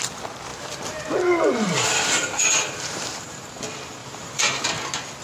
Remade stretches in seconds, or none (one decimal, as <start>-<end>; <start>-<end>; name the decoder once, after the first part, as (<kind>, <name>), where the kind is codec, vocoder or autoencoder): 0.5-3.6 (vocoder, BigVGAN v2); 4.0-4.6